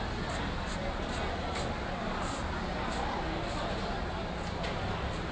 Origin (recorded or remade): recorded